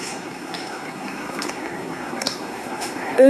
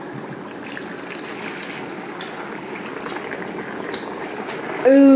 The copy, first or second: first